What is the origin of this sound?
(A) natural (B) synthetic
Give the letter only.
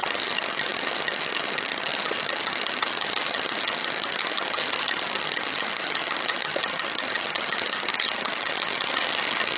B